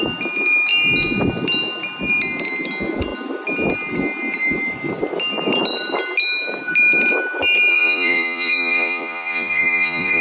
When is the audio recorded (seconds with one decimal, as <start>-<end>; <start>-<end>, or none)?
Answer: 0.0-7.7